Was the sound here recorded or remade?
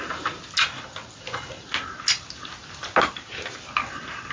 recorded